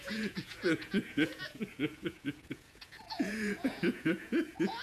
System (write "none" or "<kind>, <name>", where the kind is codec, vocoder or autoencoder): vocoder, Vocos